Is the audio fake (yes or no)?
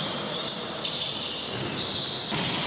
no